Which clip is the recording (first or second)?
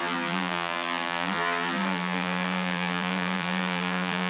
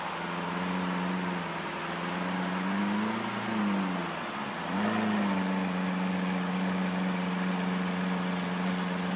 second